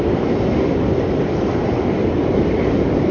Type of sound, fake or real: real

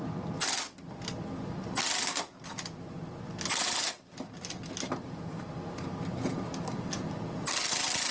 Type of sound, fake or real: real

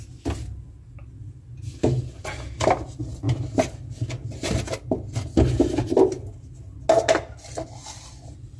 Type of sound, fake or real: real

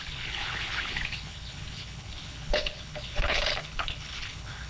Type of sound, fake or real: fake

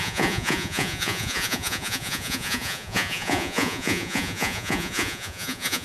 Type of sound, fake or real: fake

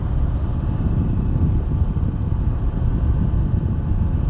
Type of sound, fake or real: real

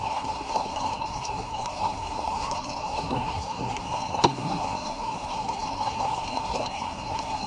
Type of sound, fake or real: fake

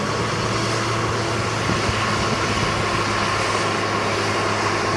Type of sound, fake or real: real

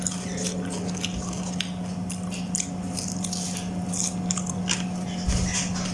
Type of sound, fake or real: real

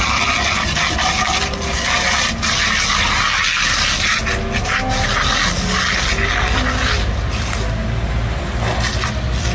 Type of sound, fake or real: real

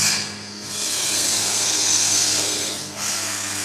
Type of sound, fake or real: fake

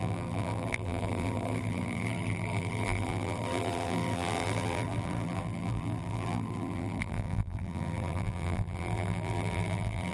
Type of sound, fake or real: fake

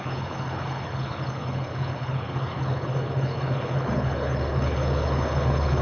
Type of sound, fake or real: fake